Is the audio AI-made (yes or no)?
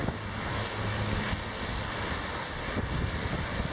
no